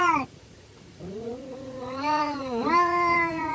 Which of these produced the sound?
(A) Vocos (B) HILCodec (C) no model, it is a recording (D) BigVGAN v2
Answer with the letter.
A